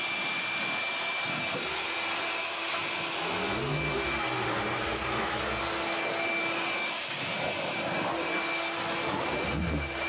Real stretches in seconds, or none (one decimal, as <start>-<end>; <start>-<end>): 0.0-6.8; 7.3-10.1

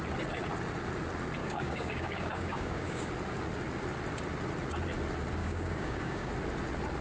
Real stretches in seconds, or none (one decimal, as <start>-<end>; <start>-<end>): 0.0-1.4; 3.1-5.4; 6.3-7.0

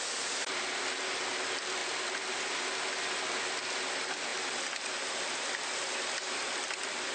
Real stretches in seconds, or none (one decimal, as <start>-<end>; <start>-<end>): 0.0-7.1

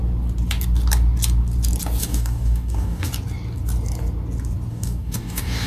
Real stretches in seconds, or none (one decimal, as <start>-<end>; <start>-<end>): 0.0-2.0; 3.1-4.7